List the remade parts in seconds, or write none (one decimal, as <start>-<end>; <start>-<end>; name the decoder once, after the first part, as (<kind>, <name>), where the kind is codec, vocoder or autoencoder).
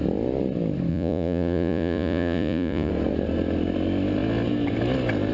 0.9-2.9 (vocoder, Vocos)